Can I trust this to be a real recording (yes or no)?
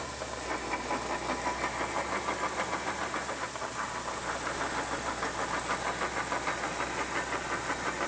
yes